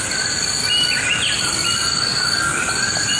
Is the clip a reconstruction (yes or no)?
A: no